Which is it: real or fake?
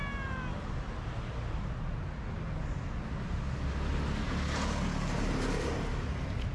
real